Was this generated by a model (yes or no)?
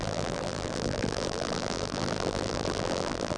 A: yes